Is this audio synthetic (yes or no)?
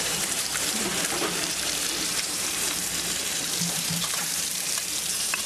yes